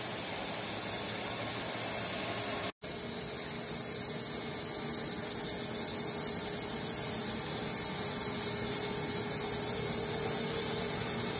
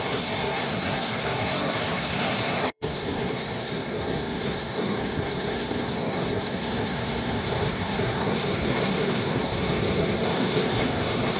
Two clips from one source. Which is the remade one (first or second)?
second